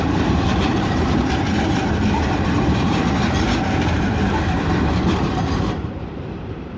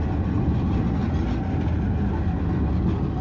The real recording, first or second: second